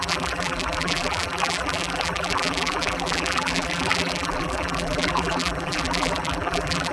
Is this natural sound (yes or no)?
no